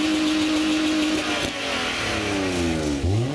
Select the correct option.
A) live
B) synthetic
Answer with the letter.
A